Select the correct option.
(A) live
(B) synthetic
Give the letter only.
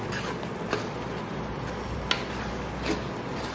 A